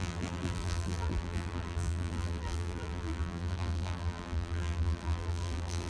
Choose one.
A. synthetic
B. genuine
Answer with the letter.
A